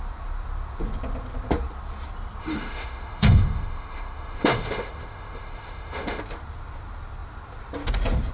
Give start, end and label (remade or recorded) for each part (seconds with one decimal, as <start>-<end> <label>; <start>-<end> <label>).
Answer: 0.0-2.4 recorded; 2.4-6.2 remade; 6.2-8.3 recorded